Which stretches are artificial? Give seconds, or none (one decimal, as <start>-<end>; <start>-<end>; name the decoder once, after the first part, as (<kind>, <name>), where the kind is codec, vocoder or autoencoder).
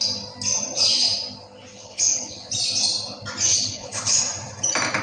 1.7-2.5 (codec, HILCodec); 3.5-4.2